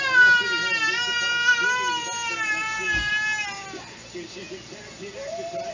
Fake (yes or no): no